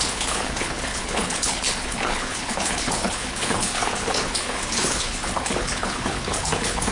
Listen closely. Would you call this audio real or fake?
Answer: fake